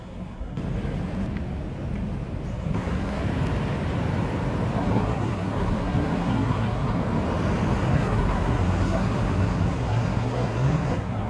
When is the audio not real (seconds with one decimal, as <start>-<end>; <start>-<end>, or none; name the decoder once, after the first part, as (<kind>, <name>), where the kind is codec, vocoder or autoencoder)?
0.0-0.6 (codec, SNAC); 2.5-3.2; 4.8-7.0; 7.9-11.3